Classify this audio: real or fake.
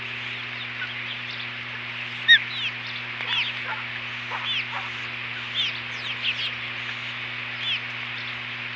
real